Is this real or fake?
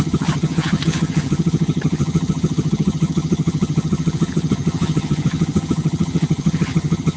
fake